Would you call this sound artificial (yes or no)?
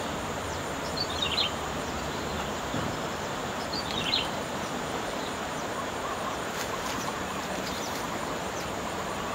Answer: yes